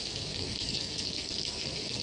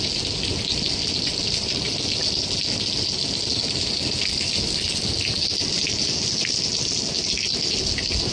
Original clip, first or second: second